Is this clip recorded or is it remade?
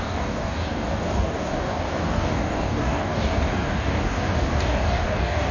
remade